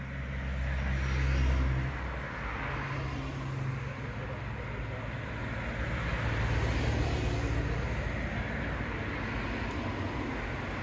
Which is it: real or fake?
real